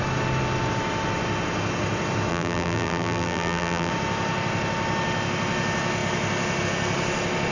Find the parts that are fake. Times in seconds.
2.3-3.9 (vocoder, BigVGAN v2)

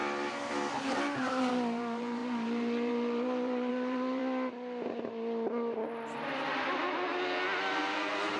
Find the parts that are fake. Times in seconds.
0.8-4.2 (vocoder, BigVGAN v2)

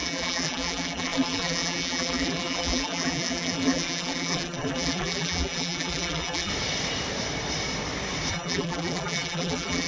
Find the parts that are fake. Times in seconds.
0.0-6.5 (vocoder, BigVGAN v2); 8.3-9.9

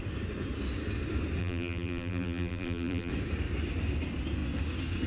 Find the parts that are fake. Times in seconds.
1.4-3.1 (vocoder, BigVGAN v2)

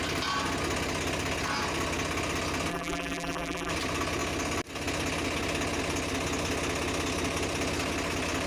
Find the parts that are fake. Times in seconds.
2.7-3.7 (vocoder, BigVGAN v2)

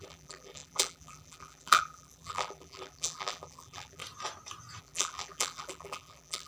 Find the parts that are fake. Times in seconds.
0.0-4.0 (vocoder, BigVGAN v2); 4.8-6.5

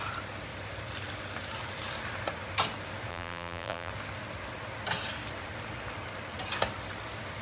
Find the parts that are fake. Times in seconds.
3.1-3.9 (vocoder, BigVGAN v2)

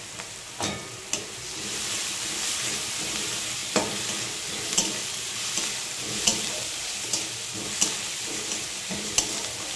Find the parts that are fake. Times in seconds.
0.0-3.6 (vocoder, BigVGAN v2); 5.0-6.3; 8.1-9.8